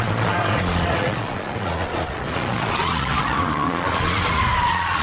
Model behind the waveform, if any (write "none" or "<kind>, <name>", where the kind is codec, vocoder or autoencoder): vocoder, Vocos